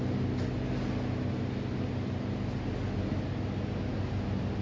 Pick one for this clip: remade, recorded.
recorded